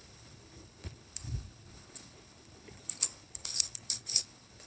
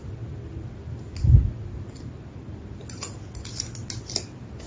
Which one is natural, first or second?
second